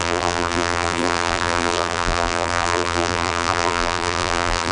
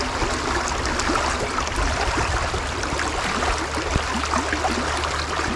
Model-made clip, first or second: first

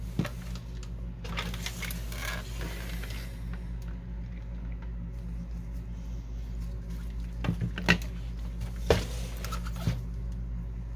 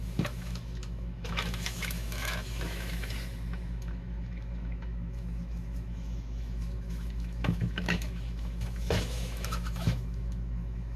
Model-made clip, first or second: second